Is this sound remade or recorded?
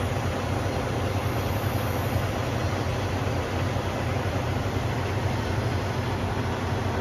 recorded